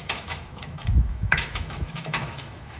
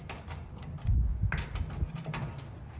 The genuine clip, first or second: second